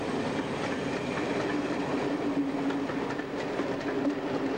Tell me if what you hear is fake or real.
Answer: real